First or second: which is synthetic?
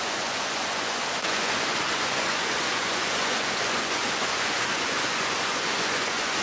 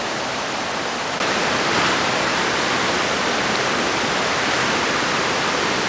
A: first